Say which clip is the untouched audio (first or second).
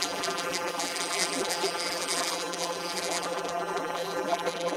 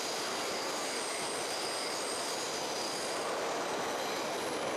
second